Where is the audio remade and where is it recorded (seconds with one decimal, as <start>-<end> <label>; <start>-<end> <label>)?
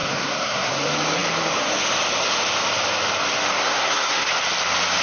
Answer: 0.0-0.7 remade; 0.7-3.6 recorded; 3.6-4.3 remade; 4.3-5.0 recorded